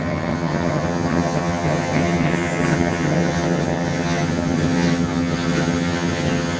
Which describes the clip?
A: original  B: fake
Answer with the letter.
B